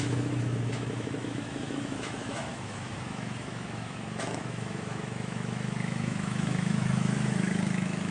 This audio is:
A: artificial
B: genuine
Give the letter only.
A